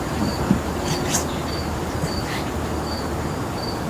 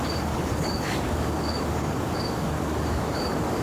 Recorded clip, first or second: first